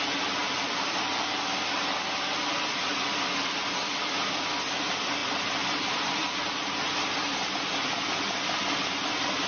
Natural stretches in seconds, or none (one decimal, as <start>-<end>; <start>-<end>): 0.0-0.4; 2.4-5.2; 6.3-9.5